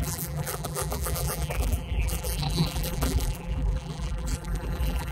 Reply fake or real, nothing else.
fake